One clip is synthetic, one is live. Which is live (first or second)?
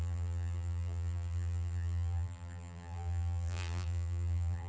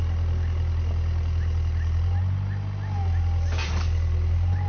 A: second